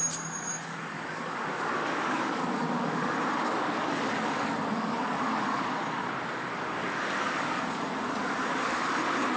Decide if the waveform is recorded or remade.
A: remade